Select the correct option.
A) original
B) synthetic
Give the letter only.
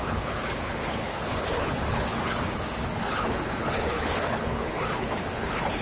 B